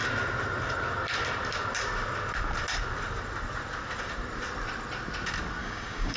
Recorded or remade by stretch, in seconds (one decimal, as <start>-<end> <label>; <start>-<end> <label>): 0.0-5.6 recorded; 5.6-6.2 remade